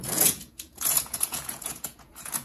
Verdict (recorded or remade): remade